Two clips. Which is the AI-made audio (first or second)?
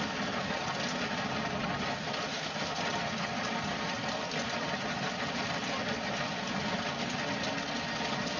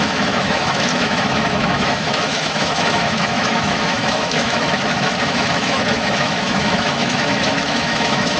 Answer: second